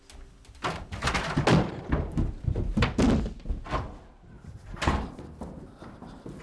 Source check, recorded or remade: recorded